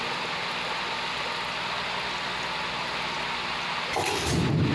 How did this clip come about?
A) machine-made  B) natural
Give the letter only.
B